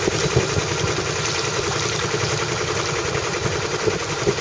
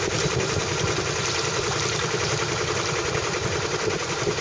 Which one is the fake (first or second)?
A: second